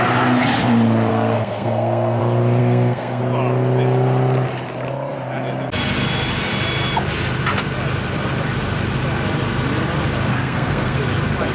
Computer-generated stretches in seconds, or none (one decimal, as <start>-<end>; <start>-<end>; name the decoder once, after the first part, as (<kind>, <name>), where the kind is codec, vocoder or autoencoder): 1.1-2.2 (codec, SNAC); 2.6-3.2; 10.3-11.0